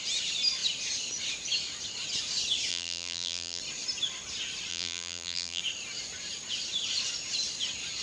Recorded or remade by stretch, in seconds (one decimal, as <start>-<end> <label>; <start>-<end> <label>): 0.0-2.7 recorded; 2.7-3.6 remade; 3.6-4.7 recorded; 4.7-5.6 remade; 5.6-8.0 recorded